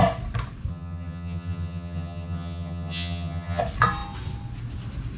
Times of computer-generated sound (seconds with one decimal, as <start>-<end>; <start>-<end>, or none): 0.7-3.6